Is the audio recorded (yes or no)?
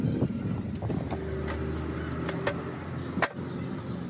yes